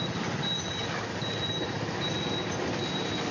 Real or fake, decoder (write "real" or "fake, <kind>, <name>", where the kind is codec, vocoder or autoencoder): real